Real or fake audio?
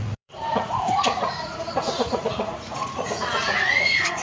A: fake